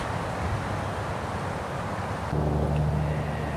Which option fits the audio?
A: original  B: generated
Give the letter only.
A